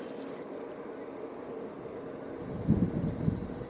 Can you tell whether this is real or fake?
real